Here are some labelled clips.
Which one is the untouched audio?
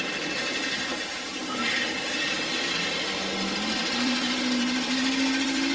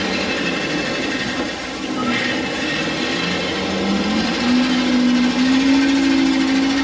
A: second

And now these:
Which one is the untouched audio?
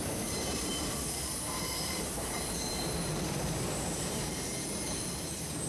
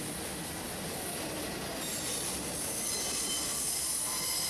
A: second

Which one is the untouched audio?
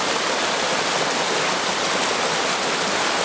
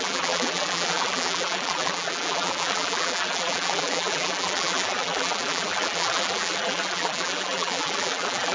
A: first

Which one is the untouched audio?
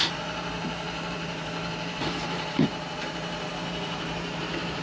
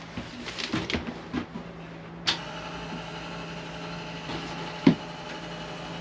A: second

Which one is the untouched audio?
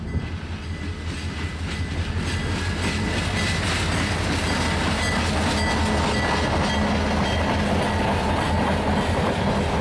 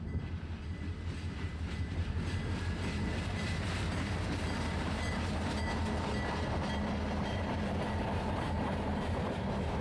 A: first